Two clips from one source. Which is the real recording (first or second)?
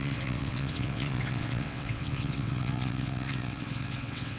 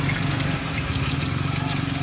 second